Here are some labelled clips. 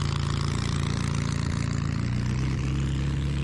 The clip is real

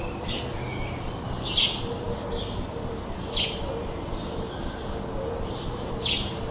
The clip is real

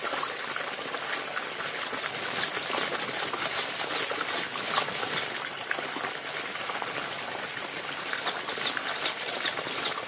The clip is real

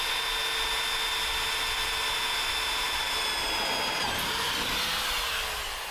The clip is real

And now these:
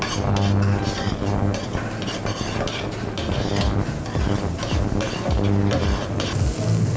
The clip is real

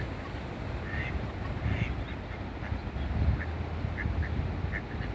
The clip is real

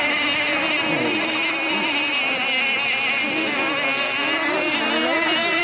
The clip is real